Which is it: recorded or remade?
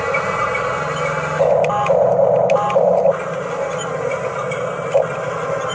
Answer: recorded